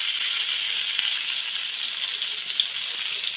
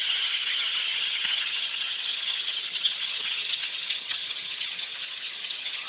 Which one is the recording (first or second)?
first